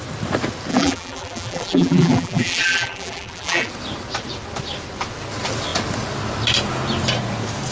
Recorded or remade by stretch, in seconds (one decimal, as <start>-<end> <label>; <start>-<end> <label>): 0.0-0.7 recorded; 0.7-3.7 remade; 3.7-7.7 recorded